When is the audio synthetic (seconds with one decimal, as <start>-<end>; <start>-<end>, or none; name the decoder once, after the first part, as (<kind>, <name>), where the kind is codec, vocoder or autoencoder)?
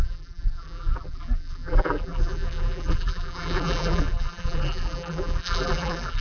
0.0-6.2 (vocoder, BigVGAN v2)